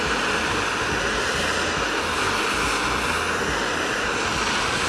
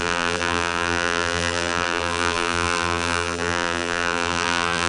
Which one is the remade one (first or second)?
second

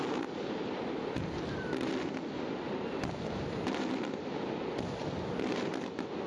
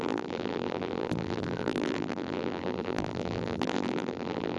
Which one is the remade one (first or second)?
second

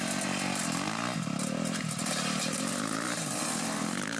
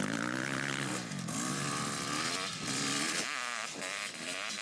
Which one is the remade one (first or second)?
first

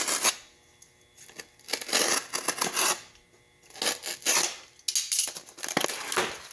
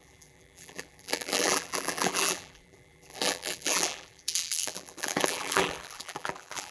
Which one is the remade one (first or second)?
second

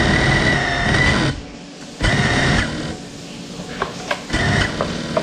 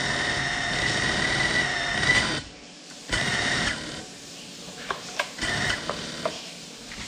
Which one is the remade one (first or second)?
second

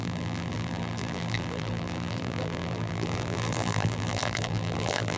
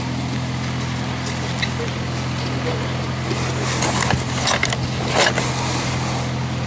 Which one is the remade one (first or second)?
first